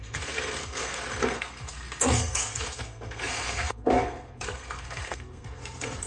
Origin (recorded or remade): remade